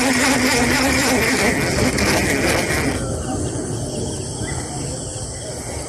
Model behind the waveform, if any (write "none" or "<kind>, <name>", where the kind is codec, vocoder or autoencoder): none